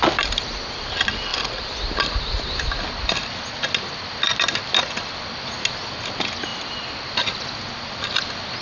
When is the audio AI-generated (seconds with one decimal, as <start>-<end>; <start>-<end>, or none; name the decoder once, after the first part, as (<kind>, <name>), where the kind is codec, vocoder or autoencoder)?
none